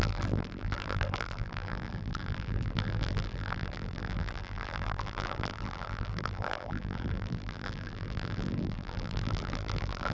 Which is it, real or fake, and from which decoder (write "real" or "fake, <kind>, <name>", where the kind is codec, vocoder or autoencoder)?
fake, vocoder, BigVGAN v2